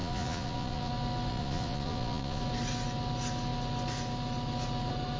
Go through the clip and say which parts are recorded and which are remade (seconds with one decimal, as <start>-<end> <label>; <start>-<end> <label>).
0.0-0.9 remade; 0.9-1.3 recorded; 1.3-2.4 remade; 2.4-5.2 recorded

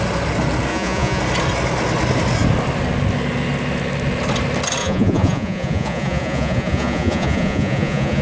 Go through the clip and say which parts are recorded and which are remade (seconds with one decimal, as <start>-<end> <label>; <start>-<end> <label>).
0.0-0.7 recorded; 0.7-1.2 remade; 1.2-4.8 recorded; 4.8-8.2 remade